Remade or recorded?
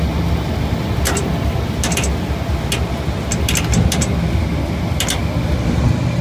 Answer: recorded